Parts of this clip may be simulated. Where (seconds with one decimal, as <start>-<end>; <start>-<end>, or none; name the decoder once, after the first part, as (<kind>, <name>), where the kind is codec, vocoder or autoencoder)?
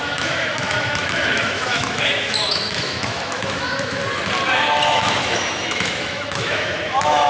0.0-4.0 (autoencoder, DAC-VAE); 4.9-7.3